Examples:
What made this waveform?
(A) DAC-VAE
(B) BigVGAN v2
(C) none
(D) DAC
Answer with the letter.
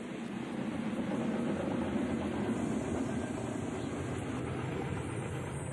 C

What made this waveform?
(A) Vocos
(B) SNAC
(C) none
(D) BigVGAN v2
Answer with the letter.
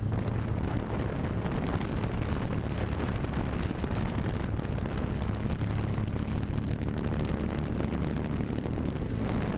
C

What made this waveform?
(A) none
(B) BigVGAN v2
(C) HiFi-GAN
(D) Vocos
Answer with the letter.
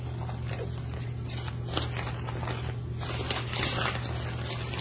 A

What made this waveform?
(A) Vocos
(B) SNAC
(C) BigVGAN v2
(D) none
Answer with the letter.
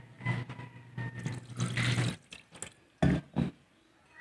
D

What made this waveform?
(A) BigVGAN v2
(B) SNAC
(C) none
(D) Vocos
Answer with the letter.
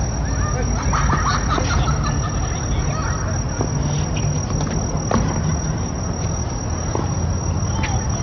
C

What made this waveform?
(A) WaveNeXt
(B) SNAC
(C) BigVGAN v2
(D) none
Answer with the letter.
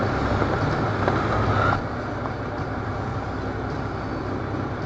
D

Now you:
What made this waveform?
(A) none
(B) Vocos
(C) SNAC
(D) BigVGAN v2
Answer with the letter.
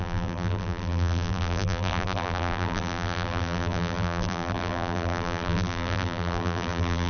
D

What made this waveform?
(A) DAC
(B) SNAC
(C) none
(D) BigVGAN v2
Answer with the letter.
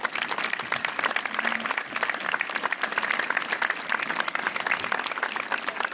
C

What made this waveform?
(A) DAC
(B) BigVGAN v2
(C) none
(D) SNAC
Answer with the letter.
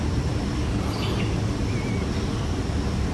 C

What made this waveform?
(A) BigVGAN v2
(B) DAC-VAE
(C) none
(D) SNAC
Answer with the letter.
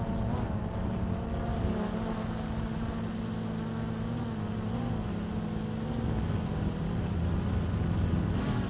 C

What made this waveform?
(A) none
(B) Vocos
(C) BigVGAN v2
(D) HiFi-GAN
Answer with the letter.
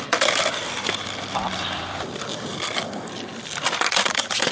C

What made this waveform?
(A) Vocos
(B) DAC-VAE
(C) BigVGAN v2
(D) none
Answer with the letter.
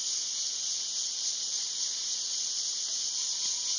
D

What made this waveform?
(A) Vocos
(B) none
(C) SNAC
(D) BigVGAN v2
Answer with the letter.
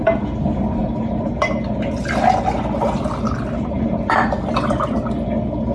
B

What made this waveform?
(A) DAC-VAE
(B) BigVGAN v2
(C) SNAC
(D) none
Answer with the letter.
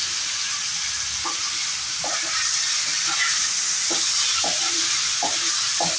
D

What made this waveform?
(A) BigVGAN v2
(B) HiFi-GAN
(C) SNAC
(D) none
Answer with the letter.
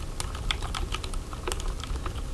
D